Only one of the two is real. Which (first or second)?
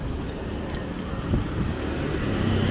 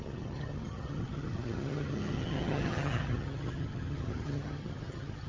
first